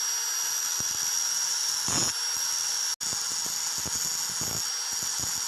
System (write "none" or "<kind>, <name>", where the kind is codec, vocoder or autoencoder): none